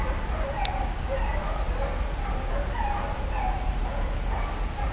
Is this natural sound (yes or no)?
yes